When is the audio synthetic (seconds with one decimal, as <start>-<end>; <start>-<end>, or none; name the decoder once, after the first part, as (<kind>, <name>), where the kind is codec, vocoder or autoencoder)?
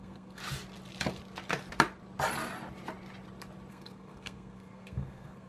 0.0-0.4 (codec, SNAC); 3.7-5.5